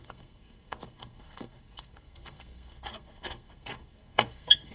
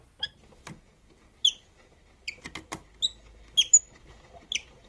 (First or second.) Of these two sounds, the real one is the second